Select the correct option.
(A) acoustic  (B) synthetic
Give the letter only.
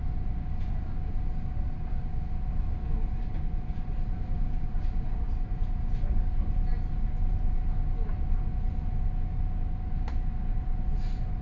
A